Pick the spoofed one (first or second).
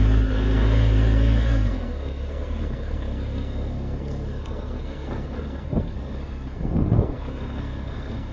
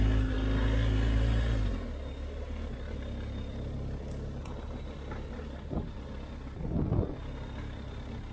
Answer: first